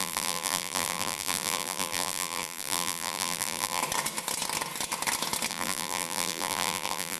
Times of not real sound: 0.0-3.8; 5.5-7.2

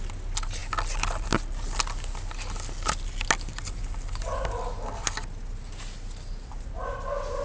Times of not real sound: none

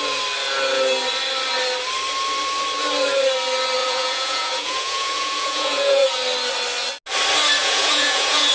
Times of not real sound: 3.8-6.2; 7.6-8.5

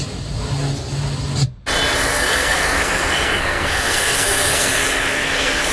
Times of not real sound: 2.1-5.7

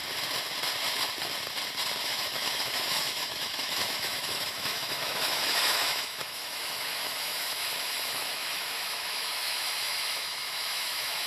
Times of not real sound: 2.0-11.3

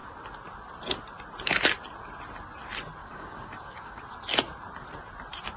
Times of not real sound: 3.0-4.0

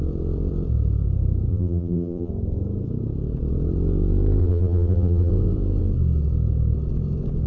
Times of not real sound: 1.5-2.3; 4.4-5.3